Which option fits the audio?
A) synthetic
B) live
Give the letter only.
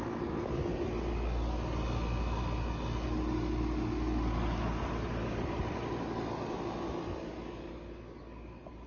B